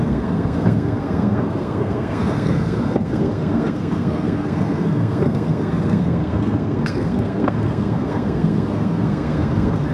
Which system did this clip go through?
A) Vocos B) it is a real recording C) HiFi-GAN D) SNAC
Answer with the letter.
D